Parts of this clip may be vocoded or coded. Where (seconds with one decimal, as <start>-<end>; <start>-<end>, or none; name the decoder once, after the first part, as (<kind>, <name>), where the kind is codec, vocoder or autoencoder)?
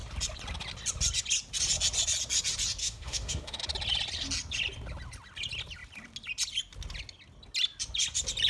2.8-3.6 (autoencoder, DAC-VAE)